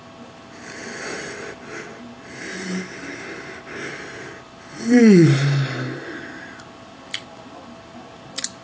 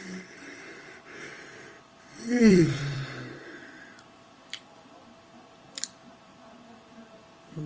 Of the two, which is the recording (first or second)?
first